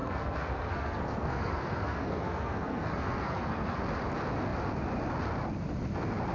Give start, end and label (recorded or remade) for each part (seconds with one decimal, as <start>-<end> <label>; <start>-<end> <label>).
0.0-3.8 remade; 3.8-6.3 recorded